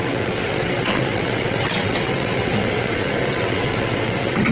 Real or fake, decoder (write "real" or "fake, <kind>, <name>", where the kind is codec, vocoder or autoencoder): fake, vocoder, WaveNeXt